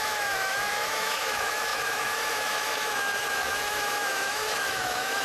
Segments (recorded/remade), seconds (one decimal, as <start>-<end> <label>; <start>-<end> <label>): 0.0-5.2 remade